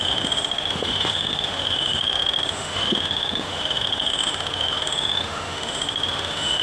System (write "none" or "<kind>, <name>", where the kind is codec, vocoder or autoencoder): autoencoder, DAC-VAE